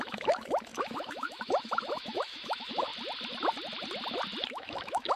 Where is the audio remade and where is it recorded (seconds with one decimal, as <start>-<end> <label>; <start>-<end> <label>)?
0.0-2.9 remade; 2.9-4.5 recorded; 4.5-5.2 remade